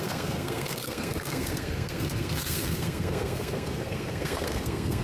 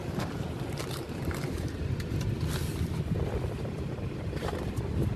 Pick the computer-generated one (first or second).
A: first